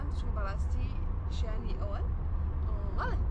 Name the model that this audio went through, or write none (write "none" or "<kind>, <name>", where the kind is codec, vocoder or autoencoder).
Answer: none